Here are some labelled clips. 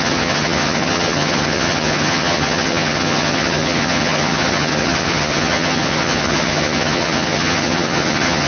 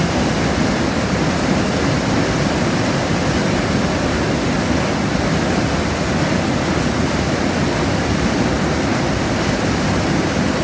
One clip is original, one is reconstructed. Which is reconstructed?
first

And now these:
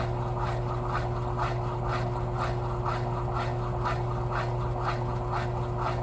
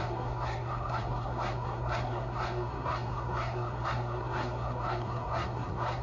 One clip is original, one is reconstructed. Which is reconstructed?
second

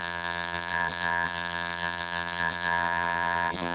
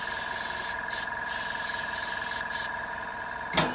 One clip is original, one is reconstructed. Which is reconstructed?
first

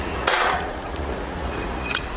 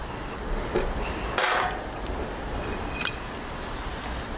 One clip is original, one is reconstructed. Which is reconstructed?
first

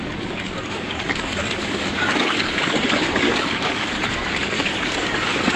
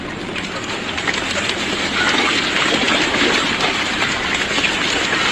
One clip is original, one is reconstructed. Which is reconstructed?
first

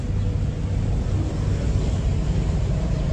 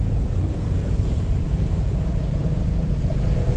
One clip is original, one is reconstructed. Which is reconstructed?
second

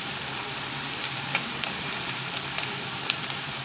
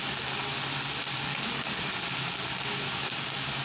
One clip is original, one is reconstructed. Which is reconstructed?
first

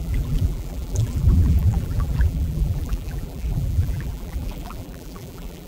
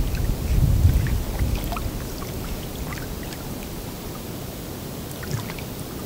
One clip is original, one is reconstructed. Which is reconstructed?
first